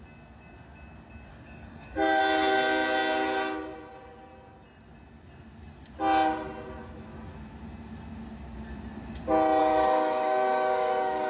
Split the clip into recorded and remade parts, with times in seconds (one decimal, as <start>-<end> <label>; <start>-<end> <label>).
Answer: 0.0-1.3 recorded; 1.3-2.2 remade; 2.2-9.6 recorded; 9.6-11.3 remade